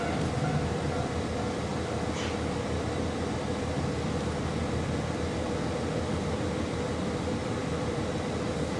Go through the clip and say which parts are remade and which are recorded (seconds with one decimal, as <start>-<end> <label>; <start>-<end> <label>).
0.0-8.8 recorded